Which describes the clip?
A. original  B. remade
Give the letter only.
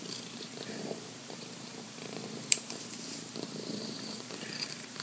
B